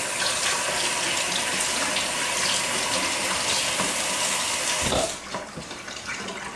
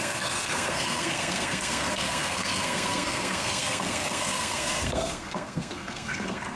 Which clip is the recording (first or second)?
first